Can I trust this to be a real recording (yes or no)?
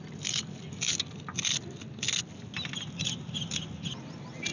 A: yes